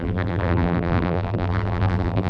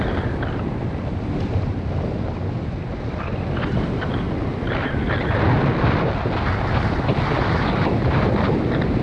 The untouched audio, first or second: second